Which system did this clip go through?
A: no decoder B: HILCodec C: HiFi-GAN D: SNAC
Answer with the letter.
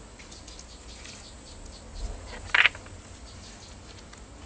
A